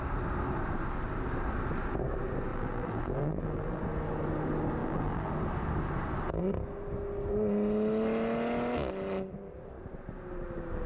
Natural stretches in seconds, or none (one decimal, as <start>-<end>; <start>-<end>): 0.0-2.5; 3.8-4.8; 5.3-10.9